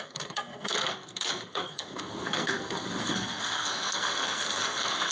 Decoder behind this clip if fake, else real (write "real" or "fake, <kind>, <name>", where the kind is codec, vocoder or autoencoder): fake, codec, SNAC